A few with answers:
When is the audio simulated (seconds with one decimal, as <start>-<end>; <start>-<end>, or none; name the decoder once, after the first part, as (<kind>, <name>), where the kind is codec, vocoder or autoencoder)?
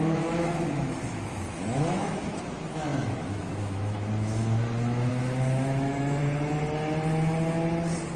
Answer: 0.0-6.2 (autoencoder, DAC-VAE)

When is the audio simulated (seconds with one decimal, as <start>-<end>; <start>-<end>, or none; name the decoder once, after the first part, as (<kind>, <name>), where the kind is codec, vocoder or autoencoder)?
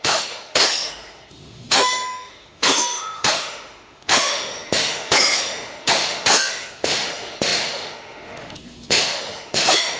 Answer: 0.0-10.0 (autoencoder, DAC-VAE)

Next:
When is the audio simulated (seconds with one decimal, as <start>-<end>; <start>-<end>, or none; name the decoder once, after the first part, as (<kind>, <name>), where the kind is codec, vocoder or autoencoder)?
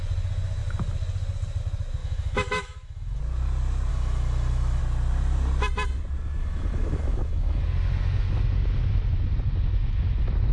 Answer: 2.0-3.2 (autoencoder, DAC-VAE); 3.9-4.8; 6.4-7.6